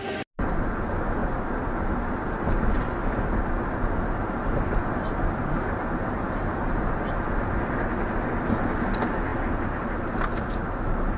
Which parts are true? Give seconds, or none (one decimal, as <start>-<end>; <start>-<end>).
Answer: 0.0-11.2